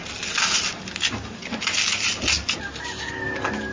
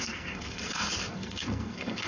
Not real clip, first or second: second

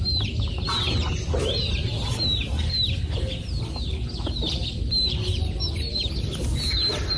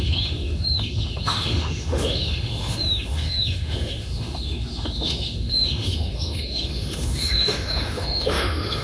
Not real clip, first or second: second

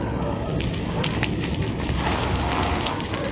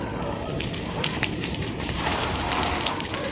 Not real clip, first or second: second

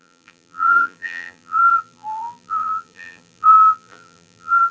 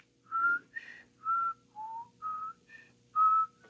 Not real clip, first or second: first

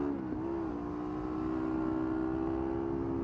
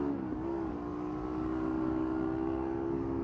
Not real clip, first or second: second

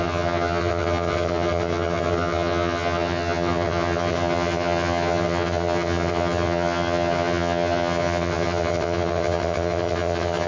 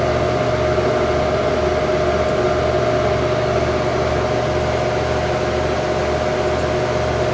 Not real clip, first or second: first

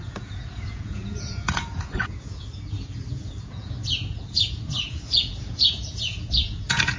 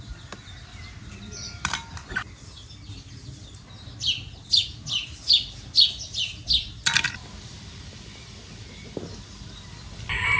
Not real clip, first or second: first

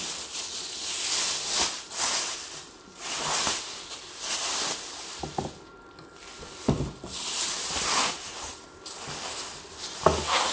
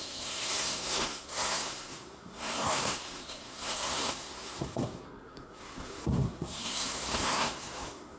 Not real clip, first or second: second